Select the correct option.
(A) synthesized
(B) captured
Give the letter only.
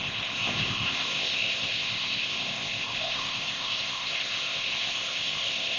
A